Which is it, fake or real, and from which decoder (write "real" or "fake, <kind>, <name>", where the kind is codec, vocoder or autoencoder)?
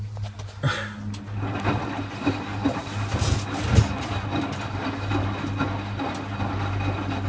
real